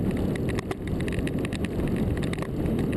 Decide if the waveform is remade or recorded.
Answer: recorded